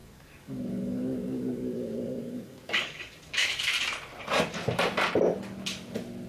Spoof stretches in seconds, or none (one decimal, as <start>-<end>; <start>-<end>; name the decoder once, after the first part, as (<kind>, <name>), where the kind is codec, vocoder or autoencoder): 0.0-3.6 (codec, DAC)